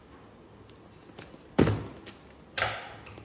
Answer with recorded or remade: recorded